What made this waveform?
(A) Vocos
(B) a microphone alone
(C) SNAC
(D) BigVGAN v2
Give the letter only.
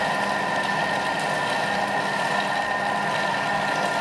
B